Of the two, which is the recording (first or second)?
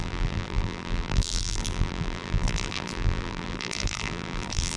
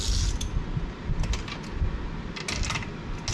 second